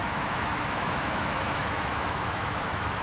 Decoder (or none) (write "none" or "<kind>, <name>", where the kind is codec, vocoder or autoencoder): autoencoder, DAC-VAE